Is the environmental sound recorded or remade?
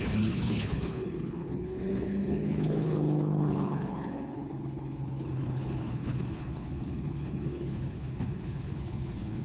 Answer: remade